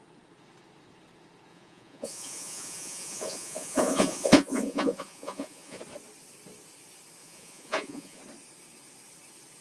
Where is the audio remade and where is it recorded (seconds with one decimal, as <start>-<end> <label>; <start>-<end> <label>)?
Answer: 0.0-1.5 recorded; 1.5-5.8 remade; 5.8-7.2 recorded; 7.2-8.2 remade; 8.2-9.6 recorded